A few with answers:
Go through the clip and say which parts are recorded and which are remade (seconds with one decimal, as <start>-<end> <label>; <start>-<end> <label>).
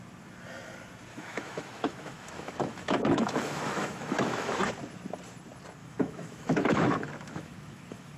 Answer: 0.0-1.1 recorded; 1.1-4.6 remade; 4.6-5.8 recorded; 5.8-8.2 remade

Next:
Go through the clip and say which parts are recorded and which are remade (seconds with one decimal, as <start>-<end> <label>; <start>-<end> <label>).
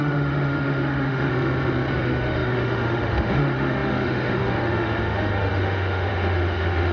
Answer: 0.0-1.3 remade; 1.3-1.9 recorded; 1.9-6.9 remade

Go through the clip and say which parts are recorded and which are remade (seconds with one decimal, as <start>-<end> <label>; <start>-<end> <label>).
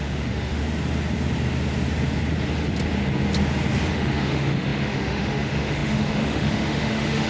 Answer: 0.0-0.6 remade; 0.6-3.9 recorded; 3.9-7.3 remade